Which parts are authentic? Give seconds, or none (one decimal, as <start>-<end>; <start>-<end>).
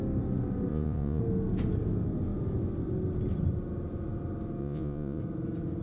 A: 0.0-0.7; 1.2-4.6; 5.2-5.8